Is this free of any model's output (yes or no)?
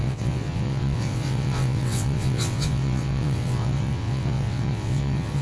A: no